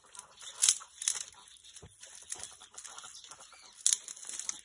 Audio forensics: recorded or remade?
recorded